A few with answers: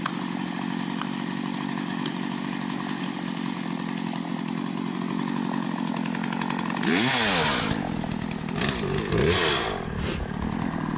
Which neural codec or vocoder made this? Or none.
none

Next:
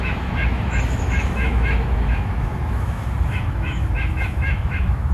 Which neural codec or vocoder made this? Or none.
autoencoder, DAC-VAE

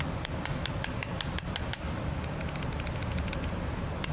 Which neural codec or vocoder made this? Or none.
none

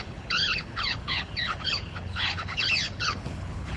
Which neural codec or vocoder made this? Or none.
codec, HILCodec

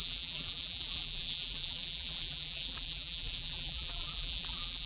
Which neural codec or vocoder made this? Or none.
vocoder, BigVGAN v2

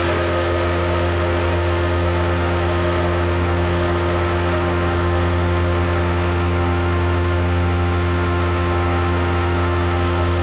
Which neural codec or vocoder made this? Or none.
autoencoder, DAC-VAE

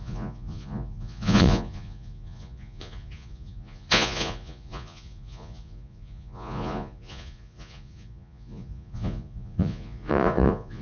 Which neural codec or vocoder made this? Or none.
vocoder, Vocos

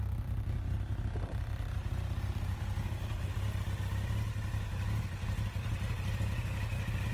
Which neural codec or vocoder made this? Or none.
none